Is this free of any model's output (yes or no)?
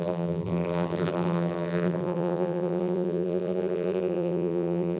no